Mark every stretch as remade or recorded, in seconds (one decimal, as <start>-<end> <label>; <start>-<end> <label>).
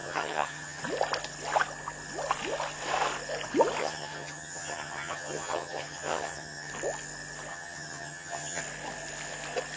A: 0.0-0.8 remade; 0.8-3.8 recorded; 3.8-6.7 remade; 6.7-7.5 recorded; 7.5-8.6 remade; 8.6-9.8 recorded